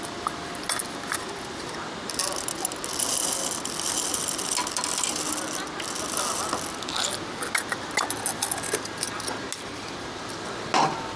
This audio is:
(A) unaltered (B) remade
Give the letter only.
A